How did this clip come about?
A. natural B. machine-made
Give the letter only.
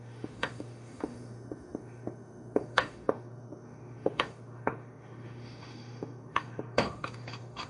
B